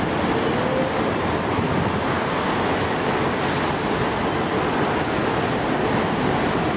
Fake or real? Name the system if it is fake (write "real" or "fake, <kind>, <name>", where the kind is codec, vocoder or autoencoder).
real